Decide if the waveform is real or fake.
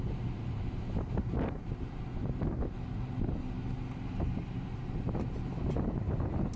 real